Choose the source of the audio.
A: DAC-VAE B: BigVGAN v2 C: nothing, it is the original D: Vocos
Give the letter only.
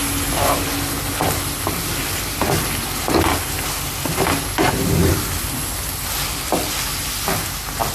C